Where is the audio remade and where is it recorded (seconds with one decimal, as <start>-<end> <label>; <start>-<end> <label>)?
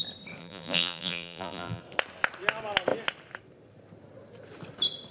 0.0-0.4 recorded; 0.4-1.8 remade; 1.8-5.1 recorded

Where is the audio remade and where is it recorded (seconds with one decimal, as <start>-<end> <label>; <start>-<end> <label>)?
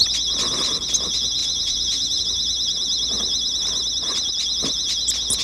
0.0-1.4 recorded; 1.4-2.2 remade; 2.2-5.4 recorded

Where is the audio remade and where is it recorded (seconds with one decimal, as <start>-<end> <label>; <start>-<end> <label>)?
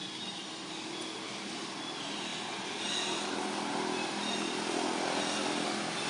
0.0-6.1 recorded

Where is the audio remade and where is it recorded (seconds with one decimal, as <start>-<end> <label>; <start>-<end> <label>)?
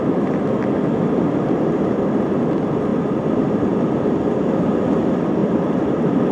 0.0-5.4 recorded; 5.4-6.3 remade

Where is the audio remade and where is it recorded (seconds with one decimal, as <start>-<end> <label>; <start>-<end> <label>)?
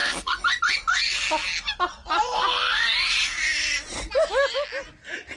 0.0-0.6 remade; 0.6-2.0 recorded; 2.0-4.3 remade; 4.3-5.4 recorded